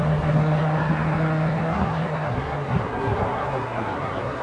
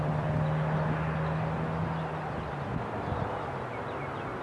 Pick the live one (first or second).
second